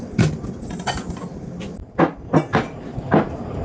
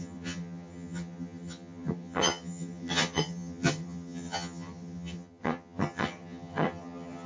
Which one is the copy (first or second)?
second